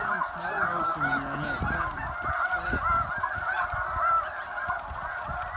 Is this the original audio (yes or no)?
yes